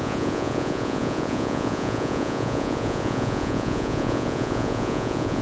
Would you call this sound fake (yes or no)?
yes